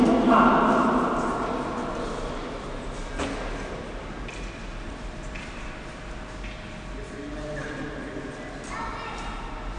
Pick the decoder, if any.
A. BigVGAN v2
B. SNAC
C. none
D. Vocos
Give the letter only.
C